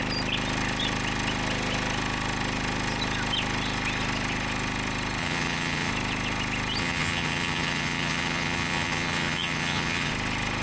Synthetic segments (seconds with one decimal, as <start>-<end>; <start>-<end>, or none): 5.2-5.9; 6.8-10.1